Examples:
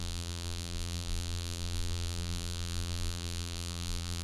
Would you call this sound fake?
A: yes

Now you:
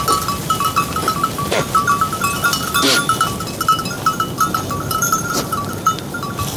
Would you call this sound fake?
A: yes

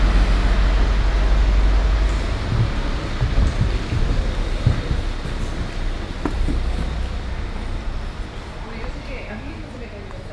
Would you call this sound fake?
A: no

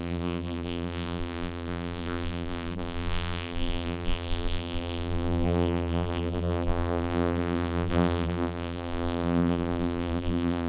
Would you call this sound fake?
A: yes